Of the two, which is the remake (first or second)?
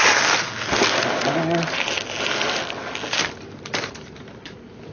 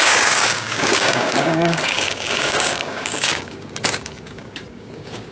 second